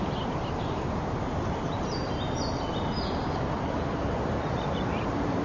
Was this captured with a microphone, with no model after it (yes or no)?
no